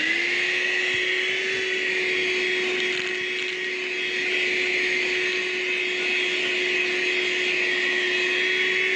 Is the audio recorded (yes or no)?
yes